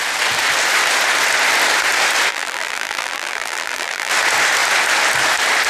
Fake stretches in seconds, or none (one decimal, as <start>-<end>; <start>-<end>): 2.3-4.1